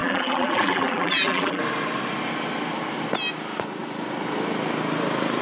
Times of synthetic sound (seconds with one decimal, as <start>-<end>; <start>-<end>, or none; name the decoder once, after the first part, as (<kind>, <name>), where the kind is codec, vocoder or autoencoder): 0.0-1.6 (vocoder, BigVGAN v2)